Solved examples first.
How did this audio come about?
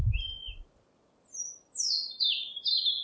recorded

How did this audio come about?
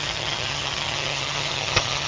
remade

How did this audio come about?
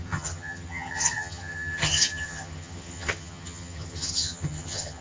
remade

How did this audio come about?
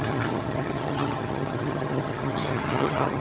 remade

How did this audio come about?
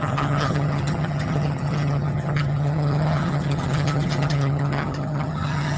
remade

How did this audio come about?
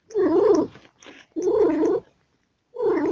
recorded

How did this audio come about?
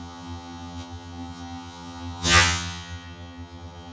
remade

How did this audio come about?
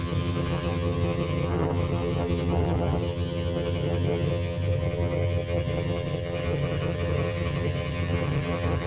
remade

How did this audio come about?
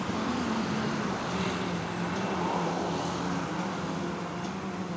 recorded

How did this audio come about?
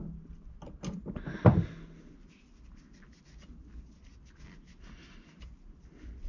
recorded